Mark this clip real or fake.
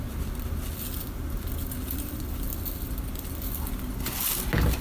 real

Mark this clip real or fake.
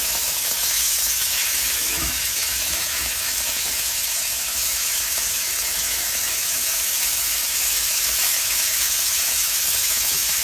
fake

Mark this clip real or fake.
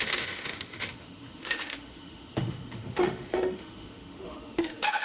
fake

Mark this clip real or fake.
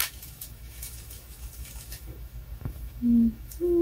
fake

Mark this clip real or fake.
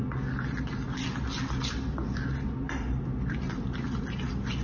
real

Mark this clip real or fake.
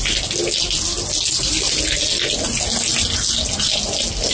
real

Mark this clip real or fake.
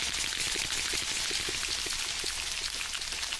real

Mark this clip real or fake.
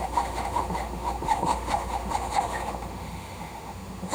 fake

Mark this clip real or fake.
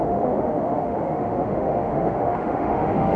fake